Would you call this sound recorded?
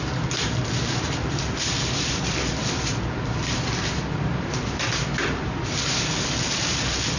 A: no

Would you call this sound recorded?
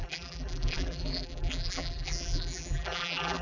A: no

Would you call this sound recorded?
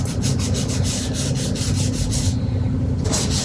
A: yes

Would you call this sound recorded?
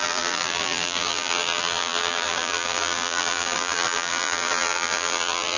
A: no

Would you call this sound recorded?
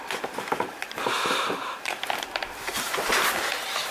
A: no